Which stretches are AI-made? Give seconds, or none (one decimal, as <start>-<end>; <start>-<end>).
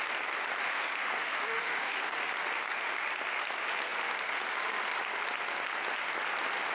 0.6-2.3